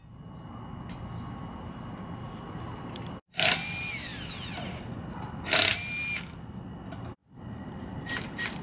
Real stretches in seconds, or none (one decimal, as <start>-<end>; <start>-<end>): 0.0-8.6